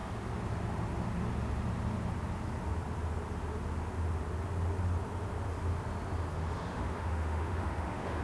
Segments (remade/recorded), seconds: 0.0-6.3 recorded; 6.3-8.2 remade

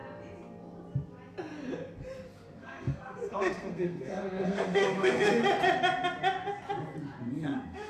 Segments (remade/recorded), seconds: 0.0-2.6 recorded; 2.6-5.4 remade; 5.4-7.3 recorded; 7.3-7.9 remade

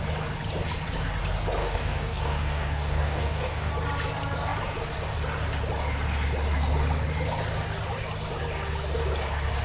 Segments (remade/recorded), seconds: 0.0-1.6 recorded; 1.6-3.7 remade; 3.7-9.6 recorded

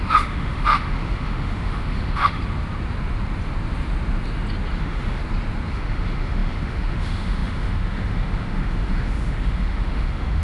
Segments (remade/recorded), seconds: 0.0-2.4 remade; 2.4-4.8 recorded; 4.8-5.2 remade; 5.2-5.7 recorded; 5.7-10.4 remade

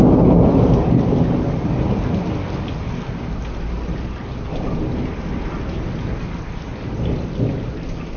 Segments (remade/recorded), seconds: 0.0-8.2 recorded

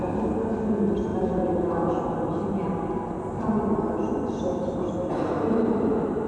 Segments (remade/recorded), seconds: 0.0-6.3 recorded

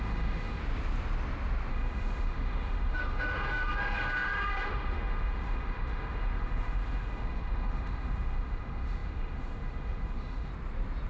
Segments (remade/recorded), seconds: 0.0-0.6 remade; 0.6-1.7 recorded; 1.7-10.5 remade; 10.5-11.1 recorded